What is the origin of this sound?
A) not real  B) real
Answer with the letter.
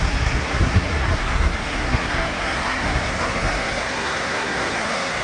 A